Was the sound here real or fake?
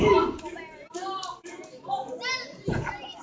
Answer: real